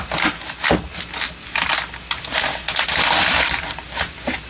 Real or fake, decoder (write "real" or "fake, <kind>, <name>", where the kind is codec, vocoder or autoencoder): real